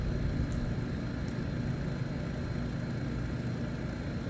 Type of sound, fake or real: real